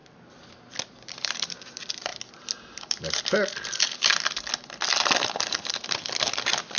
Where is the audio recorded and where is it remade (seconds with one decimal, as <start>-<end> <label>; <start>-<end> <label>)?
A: 0.0-6.8 recorded